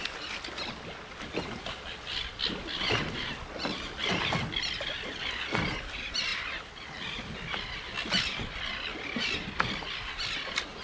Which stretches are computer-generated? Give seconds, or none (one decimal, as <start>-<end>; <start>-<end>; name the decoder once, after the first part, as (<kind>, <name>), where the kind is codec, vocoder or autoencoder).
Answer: none

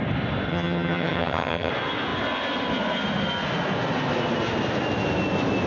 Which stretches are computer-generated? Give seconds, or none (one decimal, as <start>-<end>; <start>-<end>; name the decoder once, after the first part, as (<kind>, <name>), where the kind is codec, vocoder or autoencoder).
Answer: 0.5-1.7 (vocoder, HiFi-GAN)

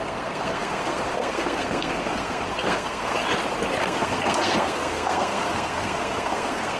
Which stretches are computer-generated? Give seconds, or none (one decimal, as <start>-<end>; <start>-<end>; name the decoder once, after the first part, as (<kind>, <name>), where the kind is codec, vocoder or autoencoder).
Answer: 0.0-3.2 (codec, SNAC); 3.8-6.8

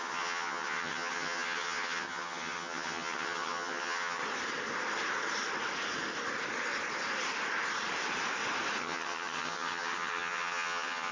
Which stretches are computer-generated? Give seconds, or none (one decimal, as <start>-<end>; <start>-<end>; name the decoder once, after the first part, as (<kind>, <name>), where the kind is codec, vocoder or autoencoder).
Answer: 0.0-4.2 (vocoder, HiFi-GAN); 8.8-11.1

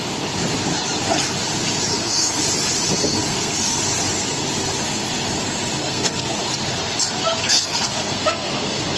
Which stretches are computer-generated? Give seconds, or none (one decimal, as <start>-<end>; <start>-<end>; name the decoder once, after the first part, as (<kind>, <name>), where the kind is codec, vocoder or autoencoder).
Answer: 1.9-2.4 (codec, SNAC); 3.3-3.8; 5.8-6.4; 7.4-8.5

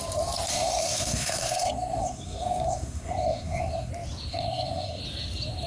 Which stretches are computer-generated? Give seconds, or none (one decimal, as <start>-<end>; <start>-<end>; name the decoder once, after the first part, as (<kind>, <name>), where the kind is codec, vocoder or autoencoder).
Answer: 0.5-3.9 (codec, SNAC); 4.3-5.0

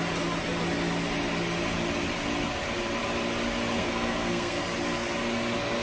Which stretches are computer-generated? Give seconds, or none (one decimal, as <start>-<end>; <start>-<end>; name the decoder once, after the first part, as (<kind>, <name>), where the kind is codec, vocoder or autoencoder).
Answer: 3.8-4.6 (codec, SNAC)

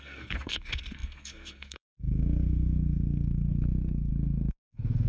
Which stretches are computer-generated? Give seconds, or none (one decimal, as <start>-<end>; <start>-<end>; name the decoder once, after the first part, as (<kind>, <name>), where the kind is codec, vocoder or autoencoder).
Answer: 0.0-5.1 (codec, SNAC)